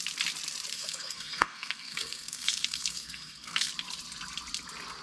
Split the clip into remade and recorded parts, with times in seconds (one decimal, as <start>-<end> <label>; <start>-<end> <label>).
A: 0.0-0.7 recorded; 0.7-3.7 remade; 3.7-5.0 recorded